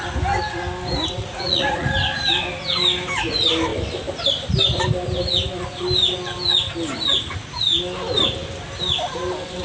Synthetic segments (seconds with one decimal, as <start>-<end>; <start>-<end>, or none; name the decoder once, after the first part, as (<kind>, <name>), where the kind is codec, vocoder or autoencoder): 1.2-1.9 (vocoder, Vocos)